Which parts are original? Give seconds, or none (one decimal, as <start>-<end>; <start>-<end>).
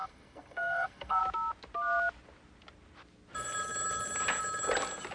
1.2-5.1